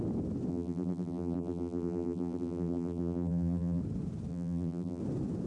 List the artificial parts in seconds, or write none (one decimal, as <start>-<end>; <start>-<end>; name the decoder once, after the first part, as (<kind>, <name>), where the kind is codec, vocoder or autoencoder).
0.5-3.8 (vocoder, BigVGAN v2); 4.3-5.0